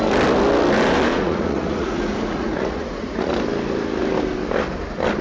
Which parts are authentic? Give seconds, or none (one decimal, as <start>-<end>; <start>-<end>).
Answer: 0.0-1.1; 3.3-5.2